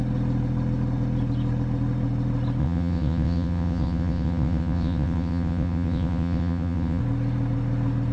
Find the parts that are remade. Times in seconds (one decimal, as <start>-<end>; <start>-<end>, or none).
2.6-7.0